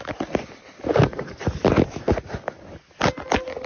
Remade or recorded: recorded